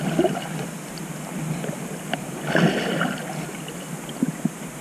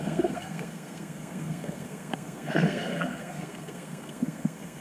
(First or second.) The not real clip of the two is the second